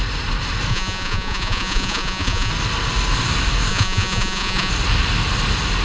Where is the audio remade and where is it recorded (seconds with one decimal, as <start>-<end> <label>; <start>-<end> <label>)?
0.0-0.7 recorded; 0.7-2.5 remade; 2.5-3.7 recorded; 3.7-4.7 remade; 4.7-5.8 recorded